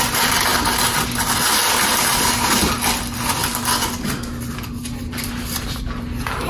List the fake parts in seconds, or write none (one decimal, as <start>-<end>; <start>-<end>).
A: none